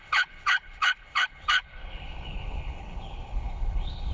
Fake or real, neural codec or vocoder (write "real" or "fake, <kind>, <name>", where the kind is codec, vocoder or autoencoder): fake, codec, HILCodec